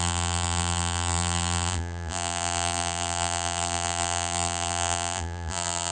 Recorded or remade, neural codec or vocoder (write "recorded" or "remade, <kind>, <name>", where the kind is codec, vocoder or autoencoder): remade, vocoder, BigVGAN v2